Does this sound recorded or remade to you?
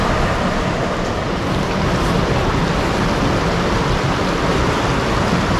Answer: recorded